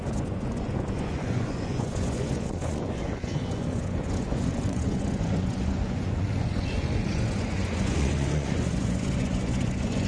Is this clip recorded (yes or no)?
no